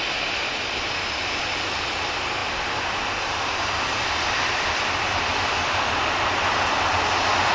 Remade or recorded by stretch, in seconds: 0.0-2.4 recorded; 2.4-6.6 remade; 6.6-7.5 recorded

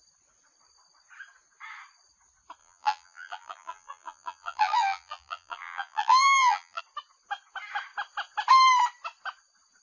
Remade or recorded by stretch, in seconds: 0.0-2.6 recorded; 2.6-6.8 remade; 6.8-9.8 recorded